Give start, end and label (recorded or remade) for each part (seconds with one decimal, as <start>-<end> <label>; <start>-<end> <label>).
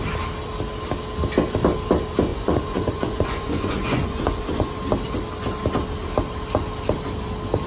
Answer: 0.0-2.3 recorded; 2.3-4.7 remade; 4.7-7.7 recorded